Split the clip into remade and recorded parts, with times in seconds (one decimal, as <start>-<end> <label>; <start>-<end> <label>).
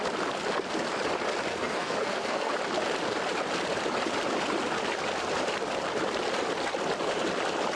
0.0-1.5 recorded; 1.5-2.5 remade; 2.5-7.8 recorded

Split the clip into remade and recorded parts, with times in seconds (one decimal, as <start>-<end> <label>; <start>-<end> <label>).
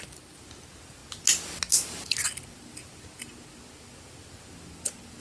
0.0-5.2 recorded